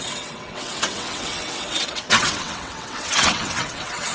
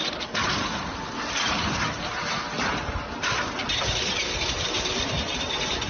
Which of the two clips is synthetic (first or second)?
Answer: first